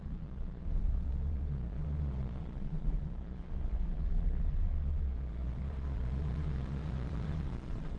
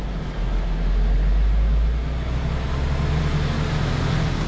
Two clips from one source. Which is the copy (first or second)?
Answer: first